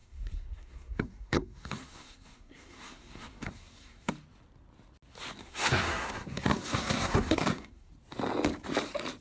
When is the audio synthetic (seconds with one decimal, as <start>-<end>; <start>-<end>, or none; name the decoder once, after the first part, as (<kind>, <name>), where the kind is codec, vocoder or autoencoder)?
0.0-4.1 (codec, SNAC); 5.4-7.9